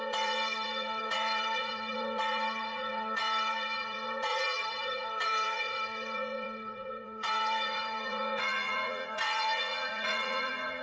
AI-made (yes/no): yes